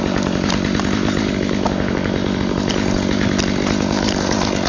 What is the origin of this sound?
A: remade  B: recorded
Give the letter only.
B